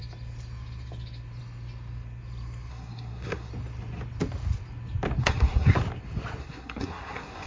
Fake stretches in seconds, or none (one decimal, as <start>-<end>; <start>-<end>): 2.7-3.5; 5.2-5.8; 6.4-7.5